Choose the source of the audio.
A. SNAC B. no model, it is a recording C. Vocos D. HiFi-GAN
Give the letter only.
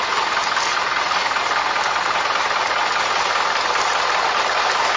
B